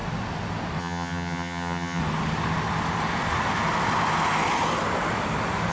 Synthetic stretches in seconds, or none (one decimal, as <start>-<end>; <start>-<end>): 0.8-2.0